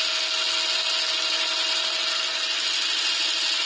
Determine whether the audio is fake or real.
real